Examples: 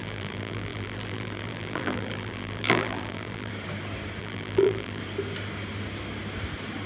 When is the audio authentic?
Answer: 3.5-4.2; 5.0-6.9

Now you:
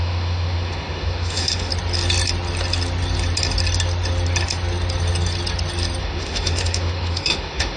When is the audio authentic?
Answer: 1.7-6.0

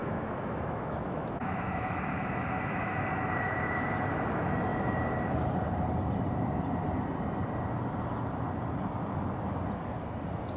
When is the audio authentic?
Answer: 3.0-10.6